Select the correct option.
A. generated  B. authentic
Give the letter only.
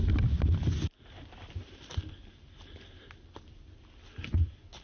B